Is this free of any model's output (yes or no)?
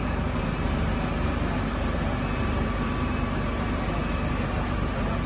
yes